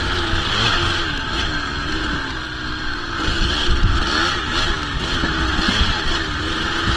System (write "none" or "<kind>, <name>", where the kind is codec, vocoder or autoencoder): none